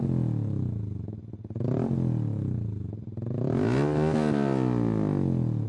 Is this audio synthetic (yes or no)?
no